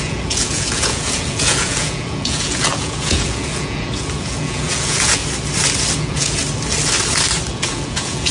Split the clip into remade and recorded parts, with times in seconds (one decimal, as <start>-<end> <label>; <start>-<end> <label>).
0.0-5.2 remade; 5.2-6.0 recorded; 6.0-6.4 remade; 6.4-7.5 recorded; 7.5-8.3 remade